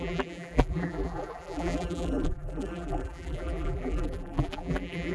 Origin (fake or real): fake